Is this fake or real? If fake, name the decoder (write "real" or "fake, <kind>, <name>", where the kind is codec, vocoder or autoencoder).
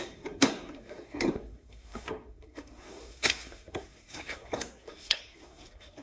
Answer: fake, codec, SNAC